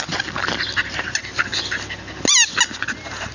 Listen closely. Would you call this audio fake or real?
real